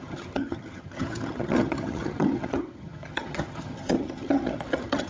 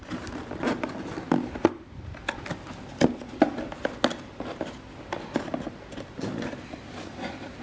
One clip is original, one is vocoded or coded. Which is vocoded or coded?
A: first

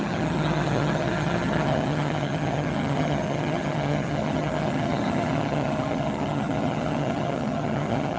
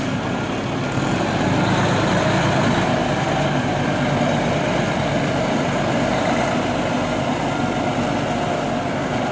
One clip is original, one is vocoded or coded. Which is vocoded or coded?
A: first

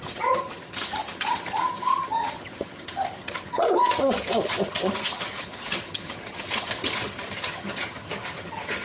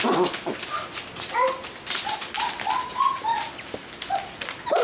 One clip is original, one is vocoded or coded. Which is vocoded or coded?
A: first